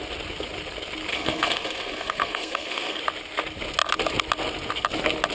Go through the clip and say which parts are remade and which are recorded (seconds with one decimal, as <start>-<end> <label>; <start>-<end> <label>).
0.0-1.1 recorded; 1.1-3.0 remade; 3.0-5.3 recorded